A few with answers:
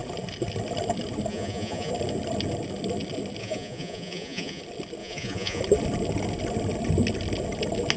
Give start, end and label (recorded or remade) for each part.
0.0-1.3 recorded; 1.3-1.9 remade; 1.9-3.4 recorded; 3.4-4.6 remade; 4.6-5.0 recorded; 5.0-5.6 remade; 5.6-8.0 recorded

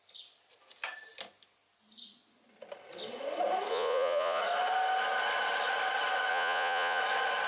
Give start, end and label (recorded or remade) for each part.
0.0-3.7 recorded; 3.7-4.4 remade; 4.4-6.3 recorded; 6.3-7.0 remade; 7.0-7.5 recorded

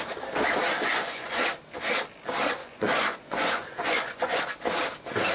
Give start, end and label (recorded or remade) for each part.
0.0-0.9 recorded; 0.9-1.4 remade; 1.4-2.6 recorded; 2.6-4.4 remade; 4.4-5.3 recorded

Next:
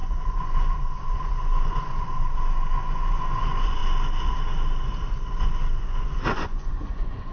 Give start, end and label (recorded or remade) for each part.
0.0-3.8 remade; 3.8-5.8 recorded; 5.8-7.3 remade